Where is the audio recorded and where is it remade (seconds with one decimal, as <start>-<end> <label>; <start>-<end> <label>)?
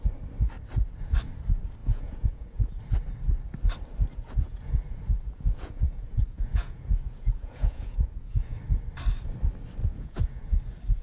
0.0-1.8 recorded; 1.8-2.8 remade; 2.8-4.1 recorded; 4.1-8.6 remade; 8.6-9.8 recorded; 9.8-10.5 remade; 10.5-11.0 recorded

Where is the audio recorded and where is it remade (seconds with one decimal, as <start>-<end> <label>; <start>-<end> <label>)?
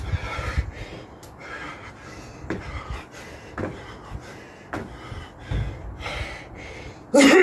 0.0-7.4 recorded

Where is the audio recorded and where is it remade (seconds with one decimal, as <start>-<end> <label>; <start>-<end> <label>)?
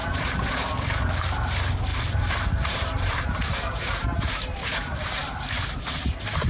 0.0-1.9 recorded; 1.9-5.8 remade; 5.8-6.5 recorded